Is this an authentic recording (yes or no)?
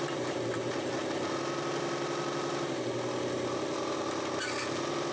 yes